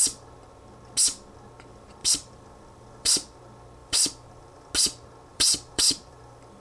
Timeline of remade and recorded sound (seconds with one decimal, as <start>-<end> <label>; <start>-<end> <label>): 0.0-2.0 recorded; 2.0-3.4 remade; 3.4-3.8 recorded; 3.8-4.7 remade; 4.7-5.3 recorded; 5.3-6.6 remade